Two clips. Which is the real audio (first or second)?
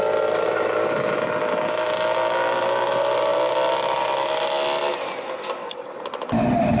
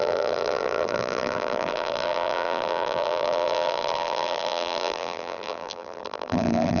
first